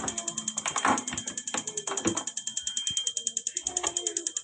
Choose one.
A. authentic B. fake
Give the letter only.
A